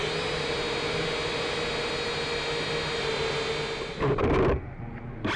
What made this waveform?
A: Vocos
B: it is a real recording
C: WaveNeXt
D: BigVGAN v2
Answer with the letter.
B